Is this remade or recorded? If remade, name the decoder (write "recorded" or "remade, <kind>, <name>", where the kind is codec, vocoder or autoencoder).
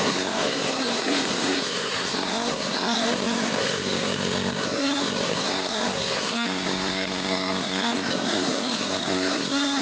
remade, codec, SNAC